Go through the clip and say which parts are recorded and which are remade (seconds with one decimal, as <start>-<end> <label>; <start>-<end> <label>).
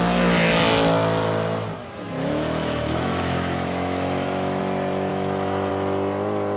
0.0-1.8 recorded; 1.8-4.6 remade; 4.6-5.1 recorded; 5.1-5.7 remade; 5.7-6.6 recorded